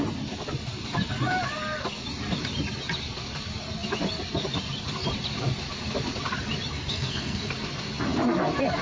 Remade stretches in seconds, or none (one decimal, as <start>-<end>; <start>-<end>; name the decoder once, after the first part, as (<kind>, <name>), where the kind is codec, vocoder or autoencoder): 6.9-7.5 (codec, SNAC)